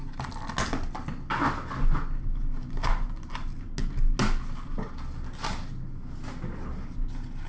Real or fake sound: real